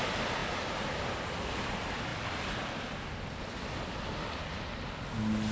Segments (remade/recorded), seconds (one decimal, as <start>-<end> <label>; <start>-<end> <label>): 0.0-5.5 recorded